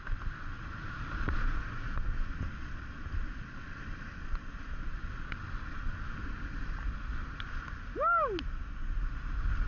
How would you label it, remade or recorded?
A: recorded